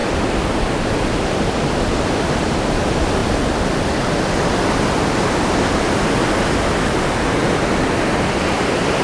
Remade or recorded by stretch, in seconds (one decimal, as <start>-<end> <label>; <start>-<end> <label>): 0.0-9.0 recorded